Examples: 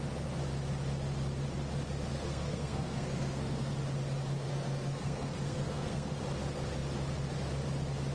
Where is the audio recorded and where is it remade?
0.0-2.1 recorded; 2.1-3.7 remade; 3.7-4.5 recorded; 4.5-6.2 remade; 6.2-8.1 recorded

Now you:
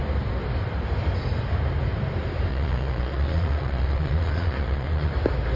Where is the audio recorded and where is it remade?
0.0-2.5 recorded; 2.5-5.1 remade; 5.1-5.6 recorded

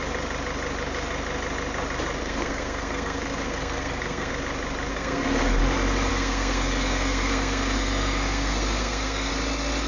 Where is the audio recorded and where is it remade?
0.0-2.2 recorded; 2.2-4.3 remade; 4.3-4.9 recorded; 4.9-5.6 remade; 5.6-6.1 recorded; 6.1-9.3 remade; 9.3-9.9 recorded

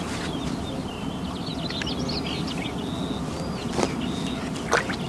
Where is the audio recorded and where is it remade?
0.0-5.1 recorded

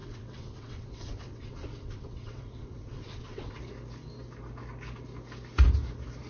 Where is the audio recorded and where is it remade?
0.0-3.6 remade; 3.6-6.3 recorded

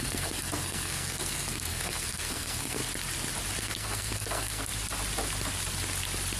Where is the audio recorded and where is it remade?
0.0-2.8 remade; 2.8-3.6 recorded; 3.6-4.7 remade; 4.7-6.4 recorded

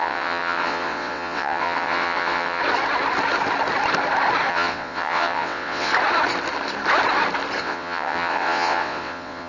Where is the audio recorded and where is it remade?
0.0-2.6 remade; 2.6-4.5 recorded; 4.5-5.9 remade; 5.9-7.6 recorded; 7.6-9.5 remade